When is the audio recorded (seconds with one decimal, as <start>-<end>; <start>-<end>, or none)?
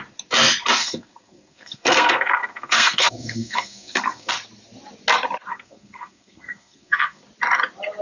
0.0-0.8; 4.3-5.5; 7.2-8.0